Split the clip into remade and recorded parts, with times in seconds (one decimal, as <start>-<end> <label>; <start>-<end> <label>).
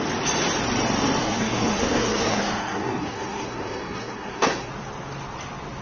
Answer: 0.0-1.2 recorded; 1.2-4.7 remade; 4.7-5.8 recorded